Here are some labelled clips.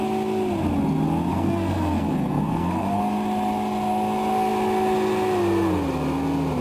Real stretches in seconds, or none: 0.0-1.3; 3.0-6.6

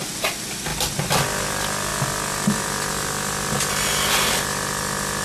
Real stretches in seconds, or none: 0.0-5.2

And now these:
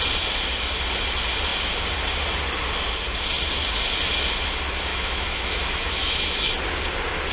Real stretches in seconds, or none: 0.0-4.9; 6.5-7.3

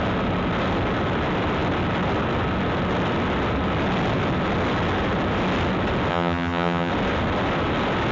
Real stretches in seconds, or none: 0.0-6.1; 6.9-8.1

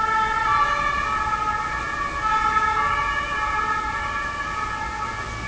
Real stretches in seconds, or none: 0.0-5.5

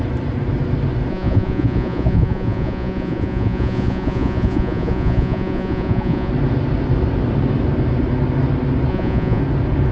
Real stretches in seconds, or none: 0.0-1.1; 6.3-8.9; 9.4-9.9

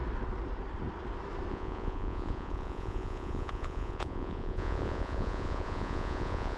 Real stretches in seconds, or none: 0.0-1.5